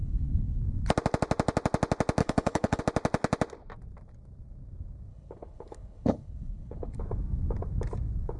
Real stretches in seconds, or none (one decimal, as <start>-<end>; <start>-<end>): 0.6-2.2; 2.8-5.1; 7.0-8.4